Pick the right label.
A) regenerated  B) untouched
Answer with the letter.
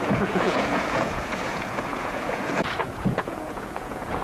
A